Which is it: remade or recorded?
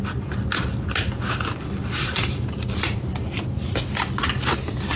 recorded